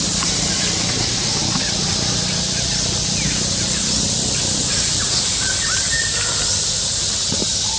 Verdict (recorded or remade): recorded